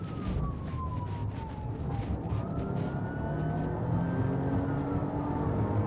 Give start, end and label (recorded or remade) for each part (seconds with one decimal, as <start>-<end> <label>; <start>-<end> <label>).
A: 0.0-1.2 recorded; 1.2-2.3 remade; 2.3-5.9 recorded